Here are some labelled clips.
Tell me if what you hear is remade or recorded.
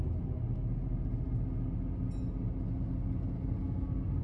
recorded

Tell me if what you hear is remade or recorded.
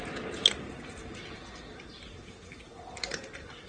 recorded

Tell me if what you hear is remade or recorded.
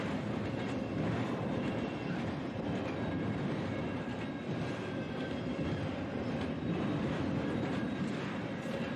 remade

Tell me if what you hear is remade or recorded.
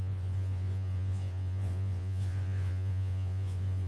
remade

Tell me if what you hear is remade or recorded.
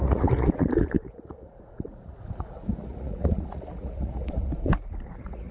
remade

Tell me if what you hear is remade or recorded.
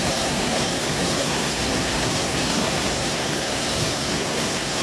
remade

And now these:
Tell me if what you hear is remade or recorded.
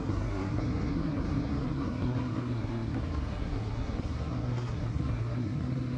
remade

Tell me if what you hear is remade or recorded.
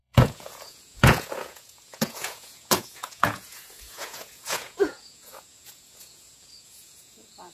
remade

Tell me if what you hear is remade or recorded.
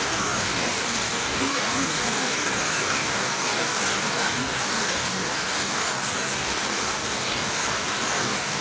remade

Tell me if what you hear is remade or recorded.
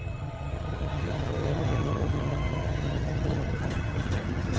remade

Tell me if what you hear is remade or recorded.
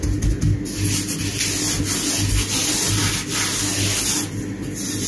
recorded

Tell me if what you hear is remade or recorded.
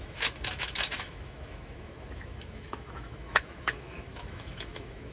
remade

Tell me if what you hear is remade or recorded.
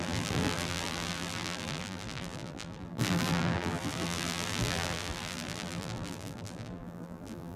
remade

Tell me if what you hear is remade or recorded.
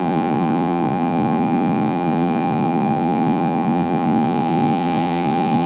remade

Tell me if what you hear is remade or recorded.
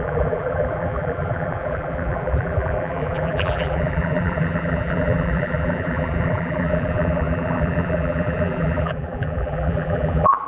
remade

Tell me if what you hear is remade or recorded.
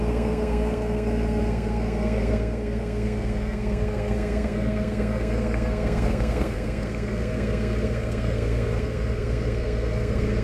remade